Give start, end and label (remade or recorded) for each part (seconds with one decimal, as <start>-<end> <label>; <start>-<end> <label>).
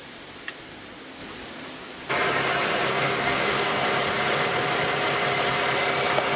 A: 0.0-2.9 recorded; 2.9-3.8 remade; 3.8-6.4 recorded